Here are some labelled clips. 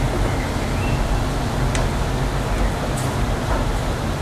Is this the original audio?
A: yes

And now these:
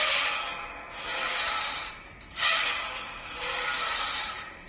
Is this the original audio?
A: yes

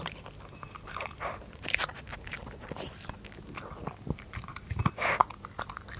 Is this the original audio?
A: yes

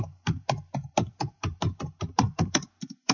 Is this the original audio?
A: no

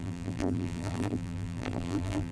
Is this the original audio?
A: no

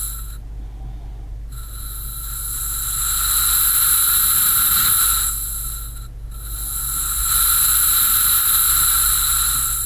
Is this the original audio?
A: yes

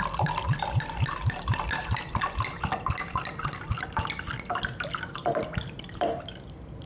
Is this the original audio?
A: yes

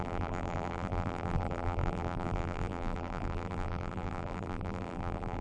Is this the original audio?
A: no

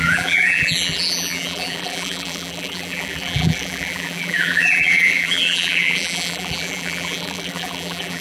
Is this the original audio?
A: no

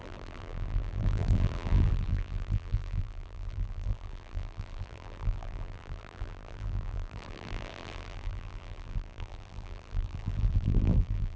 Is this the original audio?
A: no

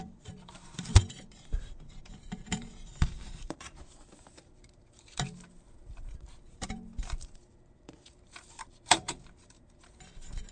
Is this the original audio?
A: no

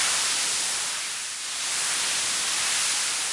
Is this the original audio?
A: no